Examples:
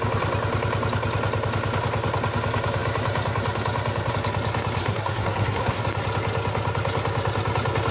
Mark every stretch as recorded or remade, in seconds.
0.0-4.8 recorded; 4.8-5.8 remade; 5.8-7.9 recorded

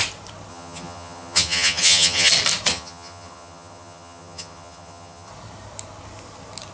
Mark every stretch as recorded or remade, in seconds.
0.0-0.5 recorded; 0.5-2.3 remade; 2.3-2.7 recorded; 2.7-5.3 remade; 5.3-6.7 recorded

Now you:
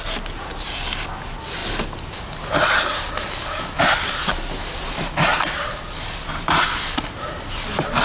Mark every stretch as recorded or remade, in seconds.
0.0-8.0 recorded

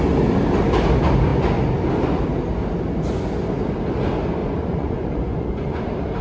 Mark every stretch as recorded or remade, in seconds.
0.0-4.4 recorded; 4.4-5.8 remade; 5.8-6.2 recorded

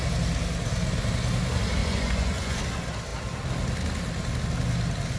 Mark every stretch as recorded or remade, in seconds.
0.0-1.8 recorded; 1.8-2.6 remade; 2.6-5.2 recorded

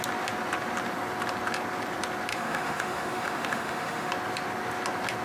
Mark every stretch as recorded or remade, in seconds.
0.0-2.3 recorded; 2.3-4.1 remade; 4.1-5.2 recorded

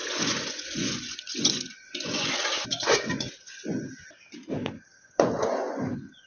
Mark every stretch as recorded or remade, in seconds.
0.0-3.8 remade; 3.8-4.9 recorded; 4.9-6.3 remade

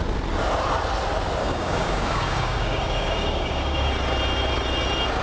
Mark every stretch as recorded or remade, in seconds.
0.0-1.4 recorded; 1.4-3.9 remade; 3.9-5.2 recorded